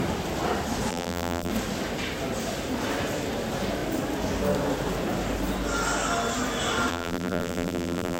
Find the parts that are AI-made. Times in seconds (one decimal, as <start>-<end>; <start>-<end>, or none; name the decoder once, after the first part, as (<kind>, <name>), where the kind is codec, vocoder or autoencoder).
0.9-1.5 (vocoder, BigVGAN v2); 6.9-8.2